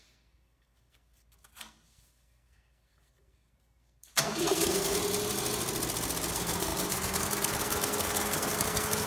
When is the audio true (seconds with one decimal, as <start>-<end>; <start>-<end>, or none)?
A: 5.0-6.3